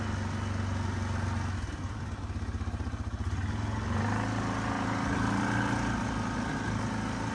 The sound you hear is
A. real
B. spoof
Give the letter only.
A